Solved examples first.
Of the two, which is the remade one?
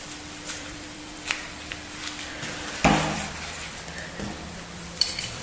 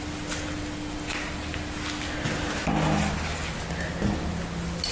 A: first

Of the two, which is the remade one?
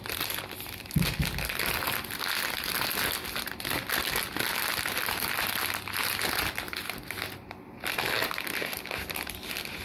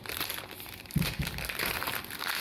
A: second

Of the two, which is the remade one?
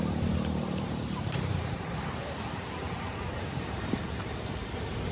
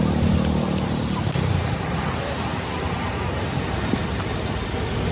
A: first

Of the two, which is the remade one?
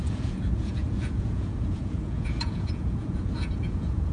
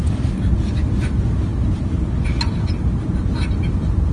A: first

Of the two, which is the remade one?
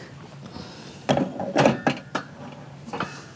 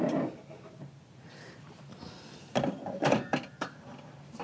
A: second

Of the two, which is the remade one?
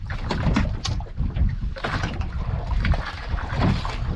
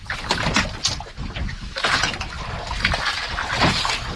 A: first